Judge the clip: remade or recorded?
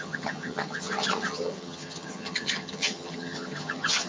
remade